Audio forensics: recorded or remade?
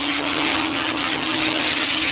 remade